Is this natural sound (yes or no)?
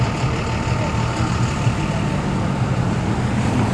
yes